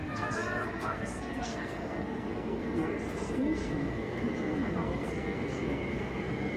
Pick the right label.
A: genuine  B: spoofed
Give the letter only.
B